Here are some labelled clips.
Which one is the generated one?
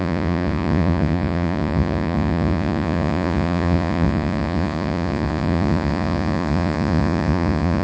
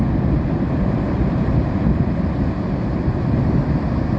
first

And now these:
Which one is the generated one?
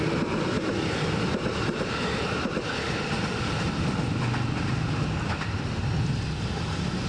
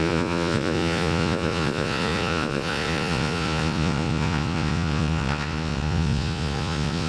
second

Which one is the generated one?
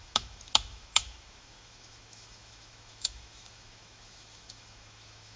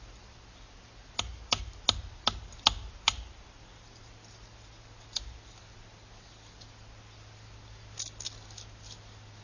first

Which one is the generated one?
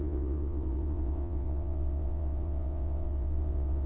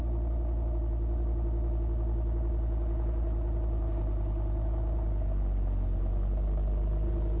first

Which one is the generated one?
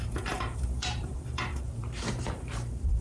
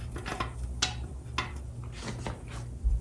first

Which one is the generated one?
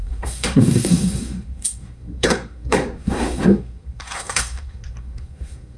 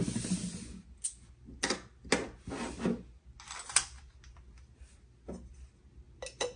first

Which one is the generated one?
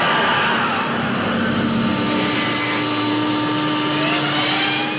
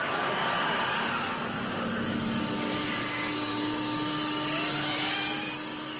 second